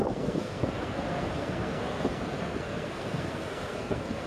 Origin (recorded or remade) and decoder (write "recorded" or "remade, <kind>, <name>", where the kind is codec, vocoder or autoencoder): remade, codec, SNAC